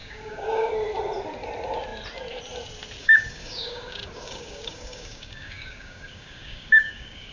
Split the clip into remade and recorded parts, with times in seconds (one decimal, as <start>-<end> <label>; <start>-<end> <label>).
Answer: 0.0-0.7 remade; 0.7-3.0 recorded; 3.0-7.3 remade